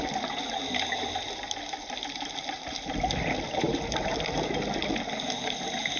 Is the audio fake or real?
real